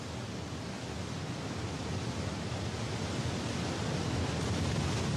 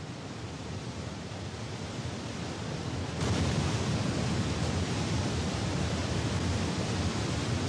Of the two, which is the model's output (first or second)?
second